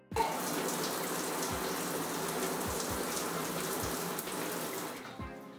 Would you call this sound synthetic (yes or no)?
no